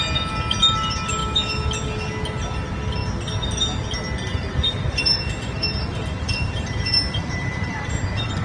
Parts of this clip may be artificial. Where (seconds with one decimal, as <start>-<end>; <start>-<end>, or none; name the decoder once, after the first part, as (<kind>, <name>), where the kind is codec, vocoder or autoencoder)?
4.4-7.9 (vocoder, BigVGAN v2)